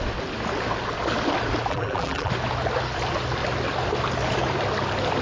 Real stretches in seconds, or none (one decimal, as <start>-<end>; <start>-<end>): 0.0-1.7; 2.3-5.2